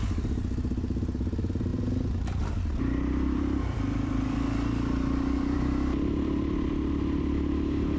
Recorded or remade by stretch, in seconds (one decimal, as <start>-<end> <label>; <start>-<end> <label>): 0.0-1.7 recorded; 1.7-5.6 remade; 5.6-8.0 recorded